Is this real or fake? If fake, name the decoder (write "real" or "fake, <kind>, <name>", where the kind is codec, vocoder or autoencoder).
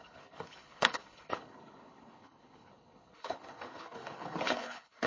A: fake, codec, HILCodec